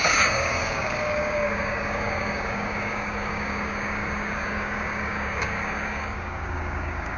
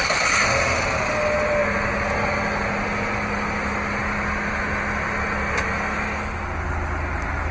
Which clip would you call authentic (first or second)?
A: second